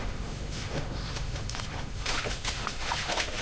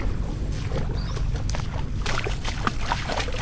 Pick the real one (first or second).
second